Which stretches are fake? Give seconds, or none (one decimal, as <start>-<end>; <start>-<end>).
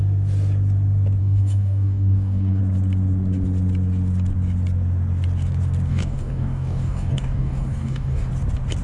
1.2-2.6; 5.9-8.3